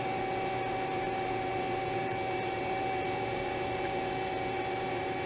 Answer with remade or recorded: remade